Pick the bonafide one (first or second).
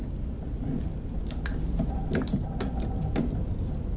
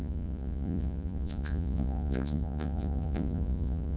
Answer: first